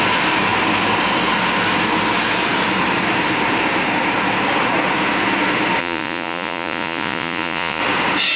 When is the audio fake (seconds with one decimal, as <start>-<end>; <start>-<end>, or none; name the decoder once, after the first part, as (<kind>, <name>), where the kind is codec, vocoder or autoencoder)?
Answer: 5.8-7.8 (vocoder, Vocos)